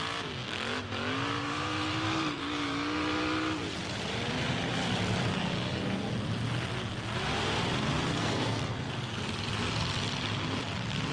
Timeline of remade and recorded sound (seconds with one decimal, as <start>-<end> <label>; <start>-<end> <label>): 0.0-5.3 recorded; 5.3-6.1 remade; 6.1-8.1 recorded; 8.1-8.9 remade; 8.9-11.1 recorded